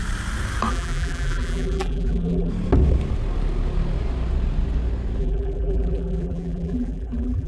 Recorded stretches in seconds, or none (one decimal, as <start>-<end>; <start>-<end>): 0.0-0.7; 2.5-5.2